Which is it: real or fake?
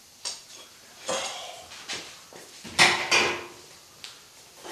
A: real